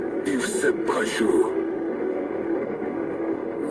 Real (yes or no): no